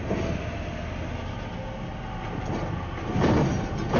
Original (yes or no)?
yes